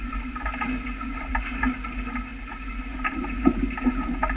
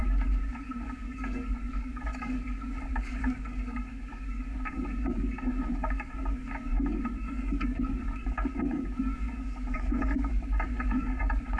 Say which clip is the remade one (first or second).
second